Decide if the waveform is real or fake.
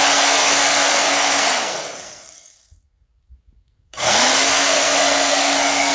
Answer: fake